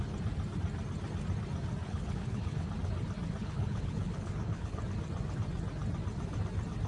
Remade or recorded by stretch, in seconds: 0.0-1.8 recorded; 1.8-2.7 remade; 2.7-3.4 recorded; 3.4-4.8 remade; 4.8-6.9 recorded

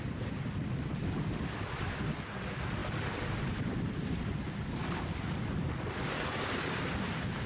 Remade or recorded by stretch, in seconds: 0.0-7.5 recorded

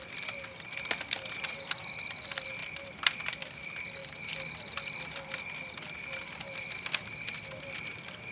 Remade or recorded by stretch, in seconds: 0.0-4.0 recorded; 4.0-4.6 remade; 4.6-8.3 recorded

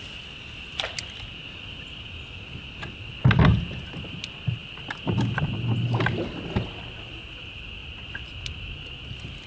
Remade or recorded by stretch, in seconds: 0.0-7.8 recorded; 7.8-8.7 remade; 8.7-9.5 recorded

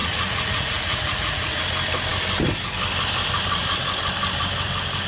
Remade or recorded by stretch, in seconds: 0.0-1.6 remade; 1.6-5.1 recorded

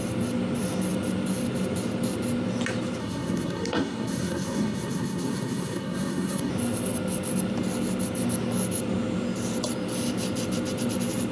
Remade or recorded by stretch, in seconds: 0.0-3.0 recorded; 3.0-6.5 remade; 6.5-11.3 recorded

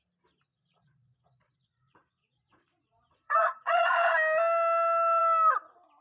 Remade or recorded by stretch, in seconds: 0.0-0.5 recorded; 0.5-4.1 remade; 4.1-6.0 recorded